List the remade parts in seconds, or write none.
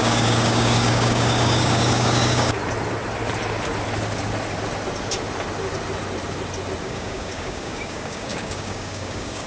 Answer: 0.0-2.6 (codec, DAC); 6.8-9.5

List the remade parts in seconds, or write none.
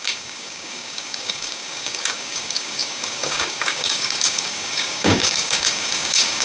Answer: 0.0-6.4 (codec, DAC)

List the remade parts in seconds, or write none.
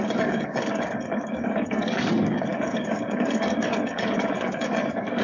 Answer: 0.0-5.2 (codec, DAC)